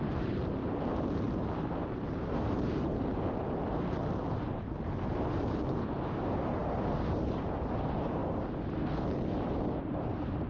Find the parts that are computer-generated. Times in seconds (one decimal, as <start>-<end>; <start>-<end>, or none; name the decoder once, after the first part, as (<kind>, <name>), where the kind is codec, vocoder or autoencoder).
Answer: 0.0-6.6 (vocoder, BigVGAN v2); 7.1-8.2; 9.8-10.5